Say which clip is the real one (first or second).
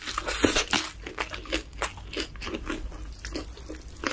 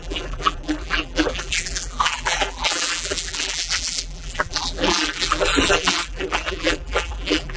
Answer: first